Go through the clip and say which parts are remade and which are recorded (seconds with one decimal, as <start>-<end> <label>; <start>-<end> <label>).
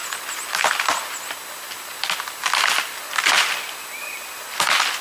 0.0-5.0 recorded